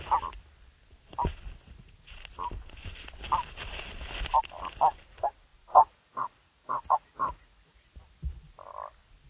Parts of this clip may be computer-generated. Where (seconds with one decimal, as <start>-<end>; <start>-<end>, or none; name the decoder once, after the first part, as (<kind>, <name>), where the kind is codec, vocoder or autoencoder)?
5.5-7.8 (vocoder, Vocos)